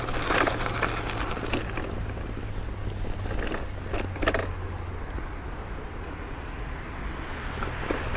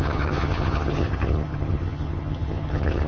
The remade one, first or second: second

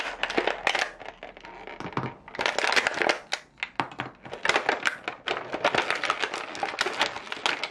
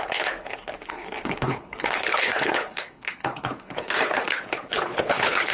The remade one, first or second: second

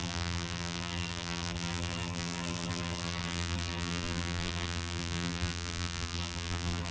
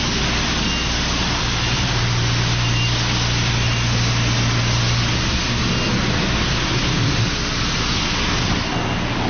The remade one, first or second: first